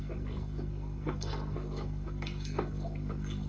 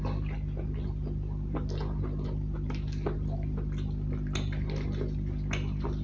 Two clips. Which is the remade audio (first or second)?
first